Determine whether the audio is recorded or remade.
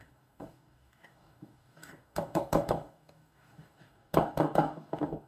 remade